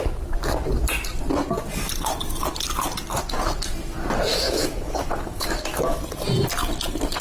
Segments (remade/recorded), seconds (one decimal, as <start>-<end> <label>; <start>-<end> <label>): 0.0-4.3 recorded; 4.3-6.0 remade; 6.0-7.2 recorded